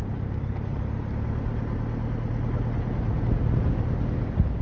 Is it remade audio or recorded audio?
recorded